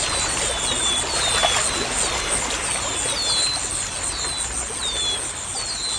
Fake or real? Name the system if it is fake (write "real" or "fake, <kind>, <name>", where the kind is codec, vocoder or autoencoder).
real